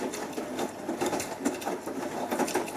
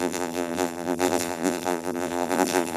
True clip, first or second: first